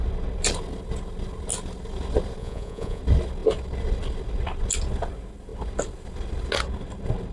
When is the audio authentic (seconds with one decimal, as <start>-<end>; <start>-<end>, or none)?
0.0-2.4; 3.0-7.3